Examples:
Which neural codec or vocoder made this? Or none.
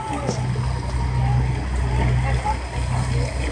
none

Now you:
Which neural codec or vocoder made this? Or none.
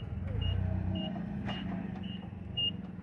vocoder, BigVGAN v2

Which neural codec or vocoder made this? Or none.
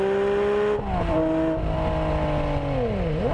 none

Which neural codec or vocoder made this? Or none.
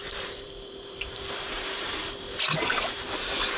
vocoder, BigVGAN v2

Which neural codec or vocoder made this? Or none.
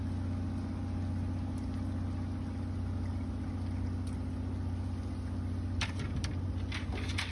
none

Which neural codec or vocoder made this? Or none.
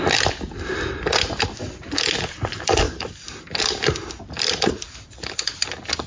none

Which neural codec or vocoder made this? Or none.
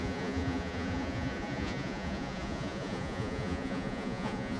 vocoder, Vocos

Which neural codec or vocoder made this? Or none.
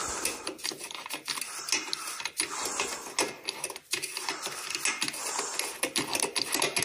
none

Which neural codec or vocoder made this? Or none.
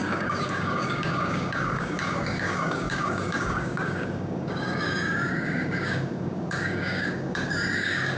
codec, DAC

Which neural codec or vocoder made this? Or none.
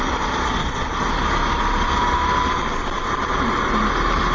none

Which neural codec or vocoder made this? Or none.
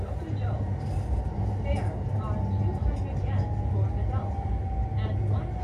none